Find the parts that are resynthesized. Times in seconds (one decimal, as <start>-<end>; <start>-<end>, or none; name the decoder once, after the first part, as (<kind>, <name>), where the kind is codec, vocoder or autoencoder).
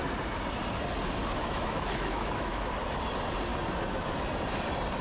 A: 1.4-2.7 (autoencoder, DAC-VAE)